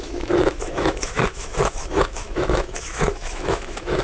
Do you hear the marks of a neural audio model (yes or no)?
yes